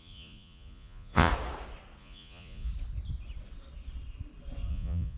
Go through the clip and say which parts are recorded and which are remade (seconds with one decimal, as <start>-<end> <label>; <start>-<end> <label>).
0.0-1.3 remade; 1.3-2.0 recorded; 2.0-2.7 remade; 2.7-4.7 recorded; 4.7-5.2 remade